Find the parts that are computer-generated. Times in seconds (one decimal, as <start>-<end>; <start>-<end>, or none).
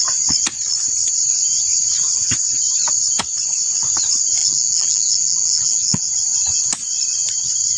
4.4-6.1